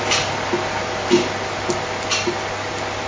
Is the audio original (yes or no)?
yes